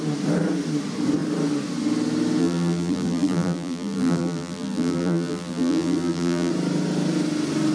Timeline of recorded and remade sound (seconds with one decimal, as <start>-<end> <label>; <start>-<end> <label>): 0.0-2.4 recorded; 2.4-6.5 remade; 6.5-7.7 recorded